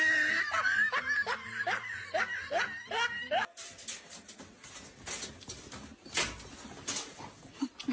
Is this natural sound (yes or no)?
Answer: yes